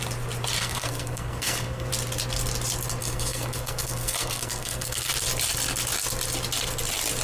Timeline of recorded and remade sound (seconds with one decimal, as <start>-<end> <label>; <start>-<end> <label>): 0.0-0.6 recorded; 0.6-1.9 remade; 1.9-3.0 recorded; 3.0-5.1 remade; 5.1-7.2 recorded

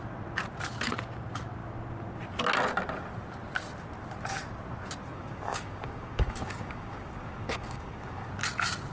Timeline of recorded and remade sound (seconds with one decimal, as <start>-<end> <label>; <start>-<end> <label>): 0.0-5.1 recorded; 5.1-8.3 remade; 8.3-8.9 recorded

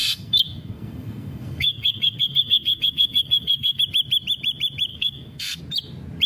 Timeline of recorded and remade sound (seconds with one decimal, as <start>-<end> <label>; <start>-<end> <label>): 0.0-3.8 remade; 3.8-4.9 recorded; 4.9-5.6 remade; 5.6-6.3 recorded

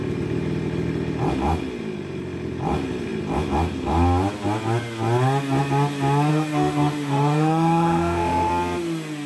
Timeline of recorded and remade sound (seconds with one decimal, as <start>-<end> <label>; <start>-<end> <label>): 0.0-6.3 recorded; 6.3-8.5 remade; 8.5-9.3 recorded

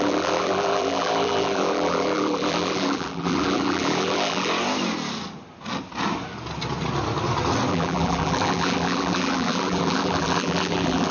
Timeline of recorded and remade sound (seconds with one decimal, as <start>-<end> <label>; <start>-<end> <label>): 0.0-4.5 remade; 4.5-7.7 recorded; 7.7-11.1 remade

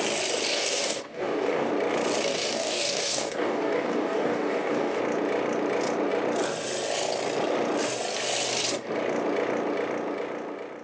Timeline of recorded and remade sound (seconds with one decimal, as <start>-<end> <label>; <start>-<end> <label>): 0.0-0.5 recorded; 0.5-1.7 remade; 1.7-2.3 recorded; 2.3-5.0 remade; 5.0-10.8 recorded